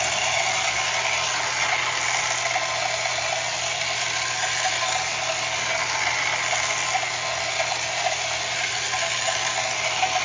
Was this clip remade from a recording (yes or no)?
no